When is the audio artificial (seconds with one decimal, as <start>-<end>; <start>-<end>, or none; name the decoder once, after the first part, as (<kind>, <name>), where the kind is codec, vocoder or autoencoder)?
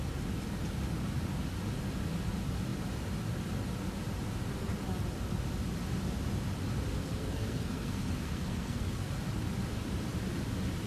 7.0-9.1 (codec, SNAC)